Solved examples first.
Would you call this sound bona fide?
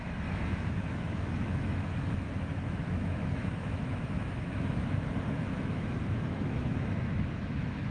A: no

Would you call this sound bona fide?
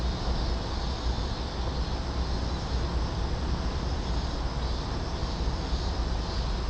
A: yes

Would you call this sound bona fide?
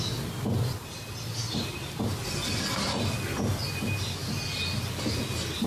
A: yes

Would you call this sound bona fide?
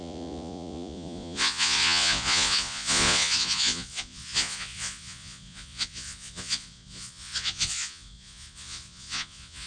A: no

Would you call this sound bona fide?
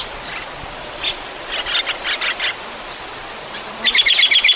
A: yes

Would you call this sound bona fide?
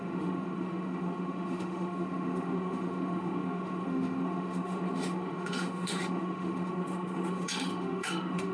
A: no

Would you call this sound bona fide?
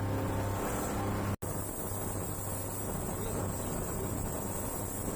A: yes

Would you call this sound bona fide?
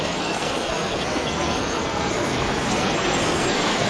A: no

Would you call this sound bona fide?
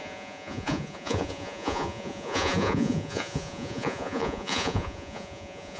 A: no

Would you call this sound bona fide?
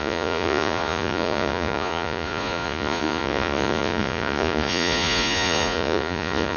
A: no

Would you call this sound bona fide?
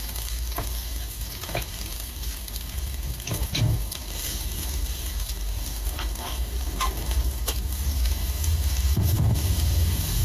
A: no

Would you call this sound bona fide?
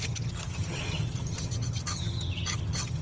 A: no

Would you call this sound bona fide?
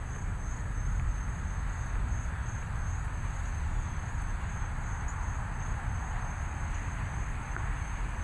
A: yes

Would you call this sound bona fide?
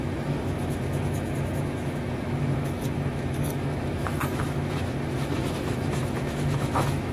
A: no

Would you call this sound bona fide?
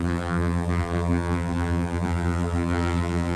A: no